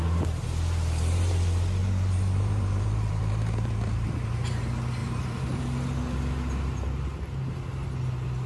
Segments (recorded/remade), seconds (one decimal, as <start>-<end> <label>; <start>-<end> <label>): 0.0-1.8 recorded; 1.8-4.6 remade; 4.6-5.0 recorded; 5.0-5.6 remade; 5.6-8.5 recorded

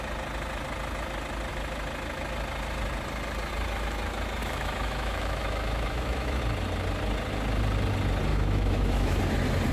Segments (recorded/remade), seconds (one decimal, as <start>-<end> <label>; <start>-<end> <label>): 0.0-4.4 recorded; 4.4-6.4 remade; 6.4-8.3 recorded; 8.3-9.2 remade; 9.2-9.7 recorded

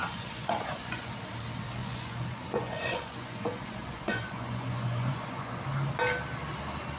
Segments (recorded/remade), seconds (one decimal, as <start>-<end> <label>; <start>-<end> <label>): 0.0-1.1 remade; 1.1-1.8 recorded; 1.8-5.6 remade; 5.6-7.0 recorded